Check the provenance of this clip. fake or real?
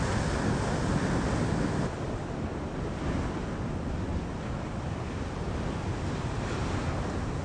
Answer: real